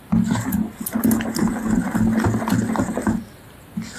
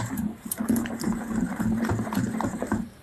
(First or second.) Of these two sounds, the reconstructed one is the second